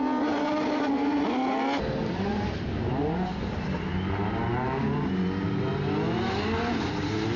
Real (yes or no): yes